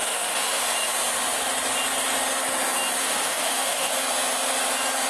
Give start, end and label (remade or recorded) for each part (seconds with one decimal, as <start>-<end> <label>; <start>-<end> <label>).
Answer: 0.0-0.6 remade; 0.6-3.0 recorded; 3.0-3.9 remade; 3.9-5.1 recorded